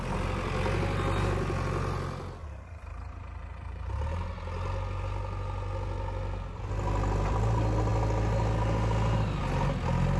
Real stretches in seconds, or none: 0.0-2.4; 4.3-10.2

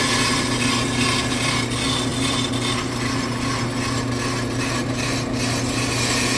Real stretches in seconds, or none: 0.0-6.4

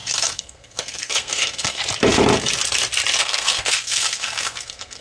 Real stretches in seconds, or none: 1.8-3.2

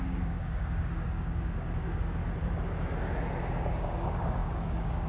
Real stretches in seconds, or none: 2.2-3.5

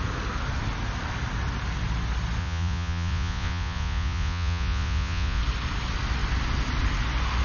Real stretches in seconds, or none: 0.0-2.4; 5.4-7.4

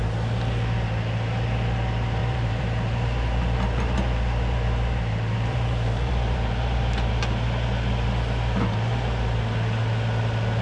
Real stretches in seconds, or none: 0.0-2.2; 7.1-10.6

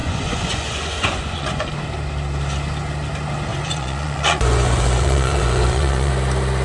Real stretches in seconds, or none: 1.7-3.5; 6.1-6.6